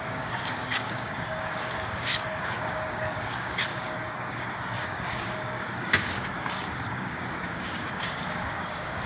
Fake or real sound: fake